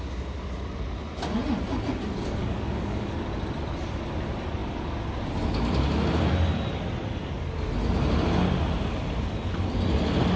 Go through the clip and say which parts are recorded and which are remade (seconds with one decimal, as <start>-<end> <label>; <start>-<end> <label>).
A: 0.0-2.4 recorded; 2.4-3.1 remade; 3.1-10.4 recorded